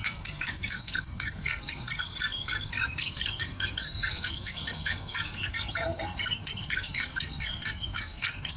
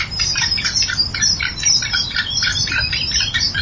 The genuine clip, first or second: second